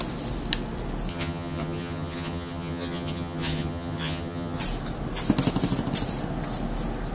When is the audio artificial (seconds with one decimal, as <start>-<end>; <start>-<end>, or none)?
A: 1.1-4.6